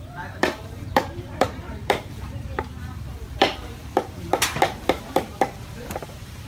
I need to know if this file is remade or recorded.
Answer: remade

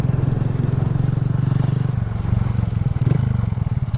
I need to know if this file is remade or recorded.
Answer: recorded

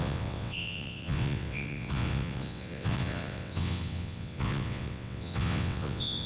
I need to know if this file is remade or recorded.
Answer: remade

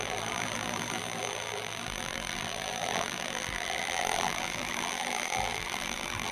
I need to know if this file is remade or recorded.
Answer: remade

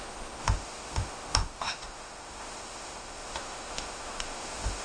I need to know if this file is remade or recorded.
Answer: remade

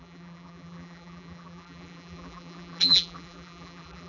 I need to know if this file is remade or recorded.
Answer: remade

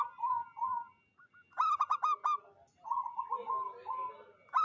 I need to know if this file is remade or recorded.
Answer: recorded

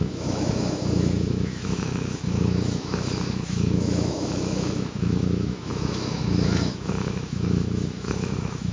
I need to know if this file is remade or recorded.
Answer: remade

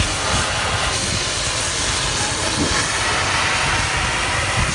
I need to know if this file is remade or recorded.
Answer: recorded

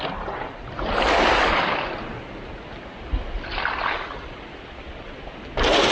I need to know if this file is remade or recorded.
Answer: recorded